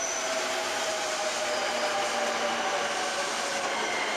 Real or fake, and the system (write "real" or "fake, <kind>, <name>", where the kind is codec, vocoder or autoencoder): real